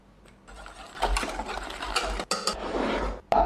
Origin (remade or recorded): recorded